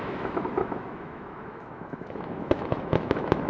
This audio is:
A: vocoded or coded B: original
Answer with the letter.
A